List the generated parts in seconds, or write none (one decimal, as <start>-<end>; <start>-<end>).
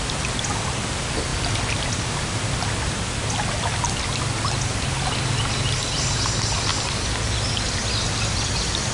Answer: none